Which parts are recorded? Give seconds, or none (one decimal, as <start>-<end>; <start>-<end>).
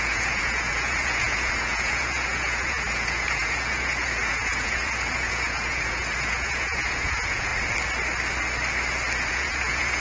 7.5-9.3